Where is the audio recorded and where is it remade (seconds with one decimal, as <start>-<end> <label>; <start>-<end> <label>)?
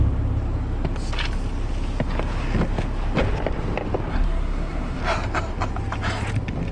0.0-4.1 recorded; 4.1-5.0 remade; 5.0-6.7 recorded